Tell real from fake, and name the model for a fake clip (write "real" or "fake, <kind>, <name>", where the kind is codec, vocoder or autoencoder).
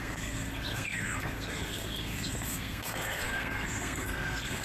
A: fake, codec, SNAC